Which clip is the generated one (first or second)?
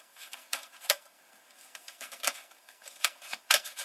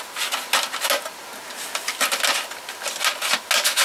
first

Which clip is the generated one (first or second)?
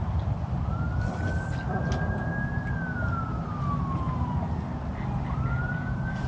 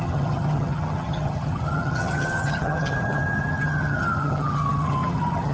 second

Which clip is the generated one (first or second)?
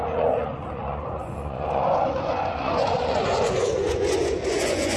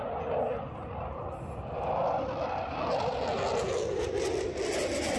first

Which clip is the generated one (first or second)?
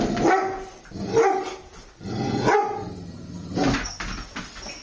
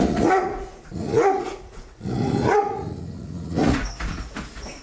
second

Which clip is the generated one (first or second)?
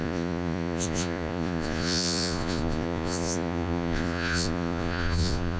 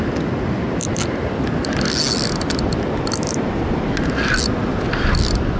first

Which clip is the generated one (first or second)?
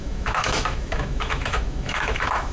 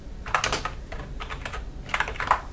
first